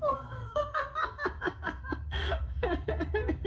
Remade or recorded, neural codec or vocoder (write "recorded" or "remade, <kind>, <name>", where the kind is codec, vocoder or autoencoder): remade, codec, SNAC